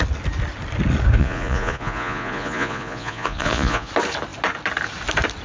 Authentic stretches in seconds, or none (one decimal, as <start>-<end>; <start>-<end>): 0.0-1.2; 3.9-5.4